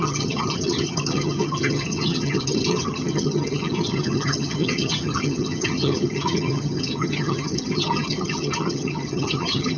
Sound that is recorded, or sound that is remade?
remade